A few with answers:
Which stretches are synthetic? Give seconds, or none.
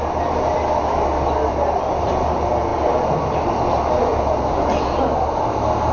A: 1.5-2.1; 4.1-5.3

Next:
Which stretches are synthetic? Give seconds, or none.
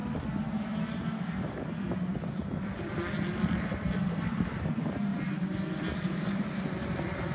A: 1.6-5.1; 5.8-7.3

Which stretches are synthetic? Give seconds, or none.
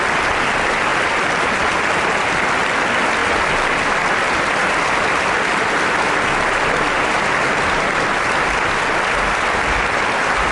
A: 0.9-1.5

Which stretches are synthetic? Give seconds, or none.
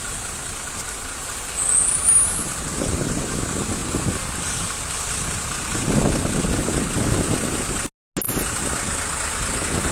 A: none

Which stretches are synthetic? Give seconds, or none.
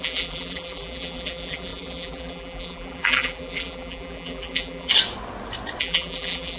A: 0.0-4.9; 5.8-6.6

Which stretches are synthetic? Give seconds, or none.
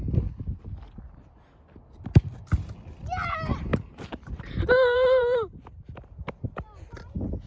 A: 3.7-6.3